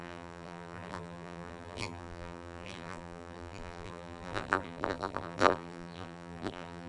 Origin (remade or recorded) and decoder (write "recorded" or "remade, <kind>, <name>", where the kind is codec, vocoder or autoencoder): remade, vocoder, BigVGAN v2